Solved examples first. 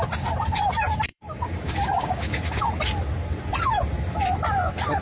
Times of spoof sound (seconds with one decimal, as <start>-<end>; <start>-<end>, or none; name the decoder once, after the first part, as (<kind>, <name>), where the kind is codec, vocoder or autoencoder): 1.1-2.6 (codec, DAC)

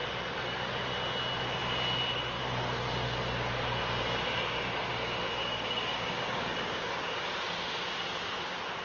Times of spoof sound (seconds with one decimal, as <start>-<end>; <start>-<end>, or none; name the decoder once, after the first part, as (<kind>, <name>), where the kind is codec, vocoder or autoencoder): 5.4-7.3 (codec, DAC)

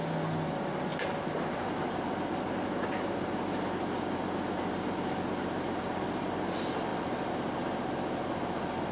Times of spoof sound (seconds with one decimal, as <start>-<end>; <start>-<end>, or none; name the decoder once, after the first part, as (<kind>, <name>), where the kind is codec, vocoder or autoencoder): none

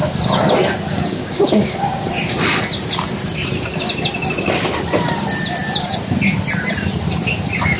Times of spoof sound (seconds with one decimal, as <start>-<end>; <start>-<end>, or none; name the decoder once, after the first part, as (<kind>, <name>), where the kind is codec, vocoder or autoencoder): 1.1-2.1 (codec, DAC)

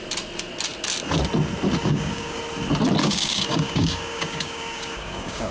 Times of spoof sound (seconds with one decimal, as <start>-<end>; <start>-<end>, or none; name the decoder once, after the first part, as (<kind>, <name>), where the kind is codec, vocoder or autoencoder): 1.8-2.4 (codec, DAC); 3.0-5.5